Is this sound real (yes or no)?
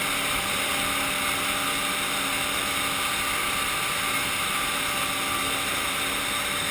yes